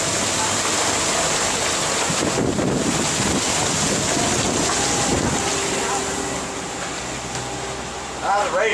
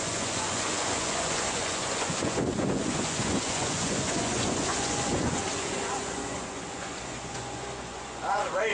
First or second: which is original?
first